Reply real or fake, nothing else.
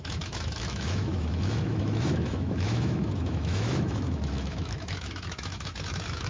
fake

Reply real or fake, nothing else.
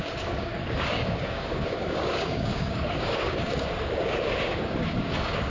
fake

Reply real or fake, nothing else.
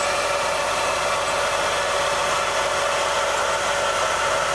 real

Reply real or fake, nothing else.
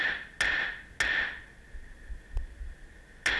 real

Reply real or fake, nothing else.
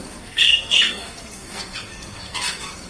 fake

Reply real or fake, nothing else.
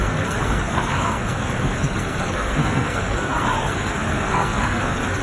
fake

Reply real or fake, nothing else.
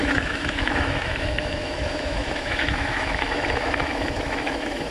fake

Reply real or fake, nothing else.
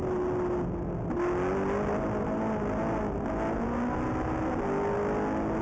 real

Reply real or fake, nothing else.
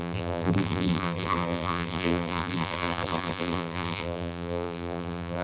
fake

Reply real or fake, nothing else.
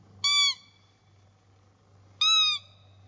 real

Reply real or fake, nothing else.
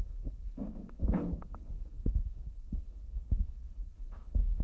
fake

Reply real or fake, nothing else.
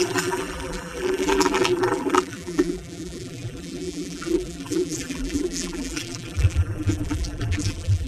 fake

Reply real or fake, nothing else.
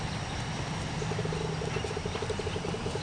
real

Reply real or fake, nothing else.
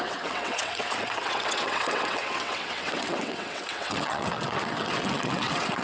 fake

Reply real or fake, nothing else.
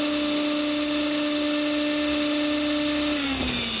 real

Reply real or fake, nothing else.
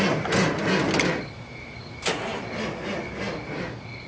real